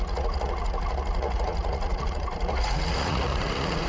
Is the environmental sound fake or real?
fake